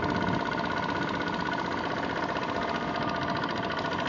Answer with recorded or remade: recorded